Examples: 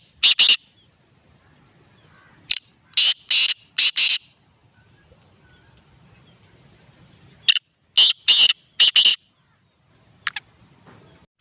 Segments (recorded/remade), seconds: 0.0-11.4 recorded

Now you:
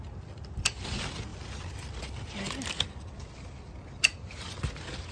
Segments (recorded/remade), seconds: 0.0-5.1 recorded

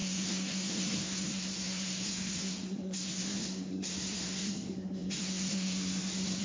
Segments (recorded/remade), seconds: 0.0-6.4 remade

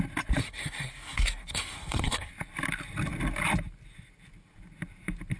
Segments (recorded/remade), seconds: 0.0-0.4 recorded; 0.4-2.3 remade; 2.3-5.4 recorded

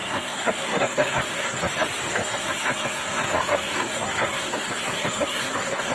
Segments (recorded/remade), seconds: 0.0-1.6 remade; 1.6-2.1 recorded; 2.1-5.9 remade

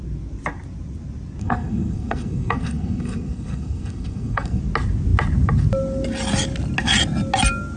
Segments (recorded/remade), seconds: 0.0-1.4 recorded; 1.4-4.6 remade; 4.6-7.8 recorded